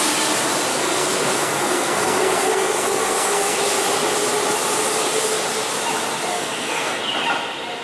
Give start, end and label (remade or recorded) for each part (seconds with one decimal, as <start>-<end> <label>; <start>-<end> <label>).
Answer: 0.0-0.7 recorded; 0.7-3.6 remade; 3.6-6.3 recorded; 6.3-7.0 remade; 7.0-7.8 recorded